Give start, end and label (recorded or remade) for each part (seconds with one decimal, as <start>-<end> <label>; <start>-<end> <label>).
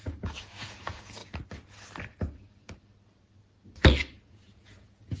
0.0-1.2 remade; 1.2-4.3 recorded; 4.3-5.2 remade